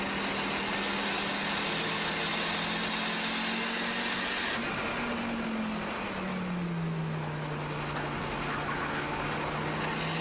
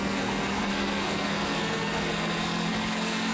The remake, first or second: second